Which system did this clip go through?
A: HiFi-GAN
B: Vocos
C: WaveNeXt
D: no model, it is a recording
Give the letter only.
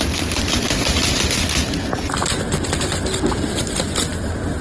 D